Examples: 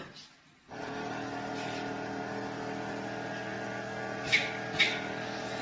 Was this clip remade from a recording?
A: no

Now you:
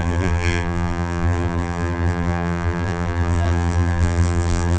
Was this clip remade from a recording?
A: yes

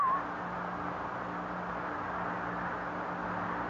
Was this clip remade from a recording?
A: no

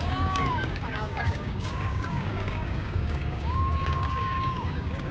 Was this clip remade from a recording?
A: yes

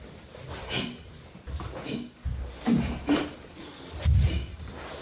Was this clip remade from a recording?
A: no